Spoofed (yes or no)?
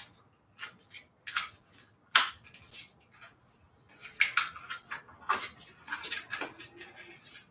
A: no